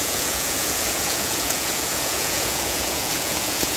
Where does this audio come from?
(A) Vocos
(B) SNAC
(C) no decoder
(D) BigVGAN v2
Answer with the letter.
A